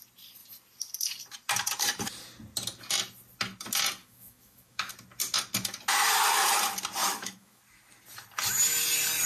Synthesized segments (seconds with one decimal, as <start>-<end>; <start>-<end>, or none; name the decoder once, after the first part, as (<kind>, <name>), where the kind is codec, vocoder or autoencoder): 4.0-4.9 (autoencoder, DAC-VAE); 7.0-7.6